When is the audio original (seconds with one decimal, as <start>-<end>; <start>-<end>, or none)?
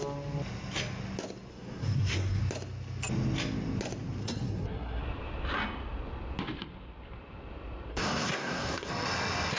0.0-1.5; 2.4-4.2; 5.0-7.9; 8.9-9.6